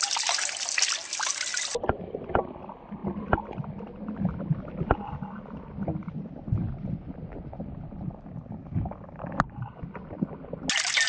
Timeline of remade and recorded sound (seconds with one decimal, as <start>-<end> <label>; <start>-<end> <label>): 0.0-1.5 recorded; 1.5-2.4 remade; 2.4-6.0 recorded; 6.0-10.3 remade; 10.3-11.1 recorded